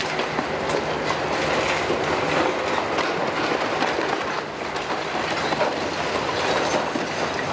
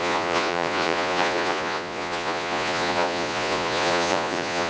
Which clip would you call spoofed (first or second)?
second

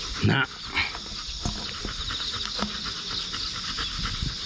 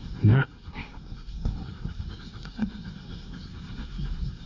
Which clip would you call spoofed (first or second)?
second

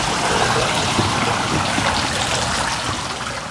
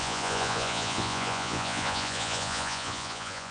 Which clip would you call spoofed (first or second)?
second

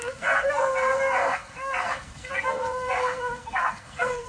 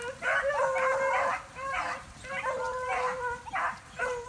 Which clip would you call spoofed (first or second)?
first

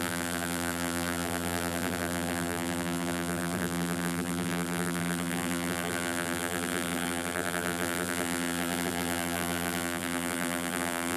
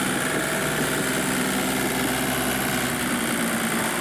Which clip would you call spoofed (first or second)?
first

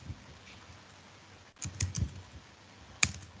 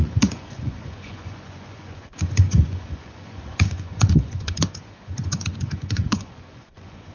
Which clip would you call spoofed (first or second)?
second